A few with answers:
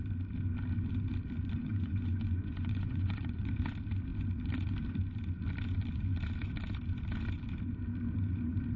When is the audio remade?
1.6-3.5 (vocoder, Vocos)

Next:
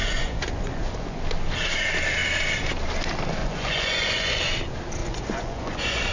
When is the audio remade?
0.0-1.2 (vocoder, Vocos); 3.4-4.4; 5.0-6.1

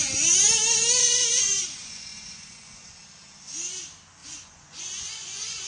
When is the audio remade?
1.8-2.9 (vocoder, Vocos); 4.2-5.7

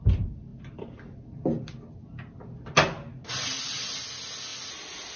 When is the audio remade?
none

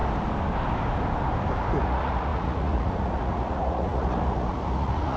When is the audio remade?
1.8-5.2 (vocoder, Vocos)

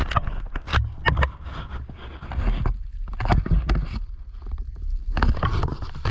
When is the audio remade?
none

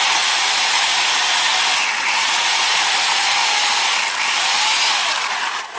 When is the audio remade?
0.0-1.5 (vocoder, Vocos); 2.0-3.4; 5.3-5.8

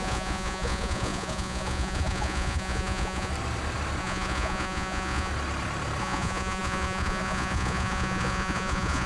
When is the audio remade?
0.0-3.3 (vocoder, Vocos); 4.0-5.3; 6.0-9.1